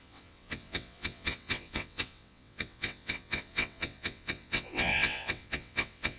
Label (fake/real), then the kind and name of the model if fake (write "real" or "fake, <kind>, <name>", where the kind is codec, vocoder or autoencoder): fake, vocoder, WaveNeXt